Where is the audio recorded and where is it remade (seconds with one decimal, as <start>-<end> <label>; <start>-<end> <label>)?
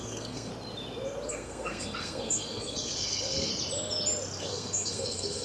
0.0-0.5 remade; 0.5-1.3 recorded; 1.3-3.5 remade; 3.5-4.4 recorded; 4.4-5.4 remade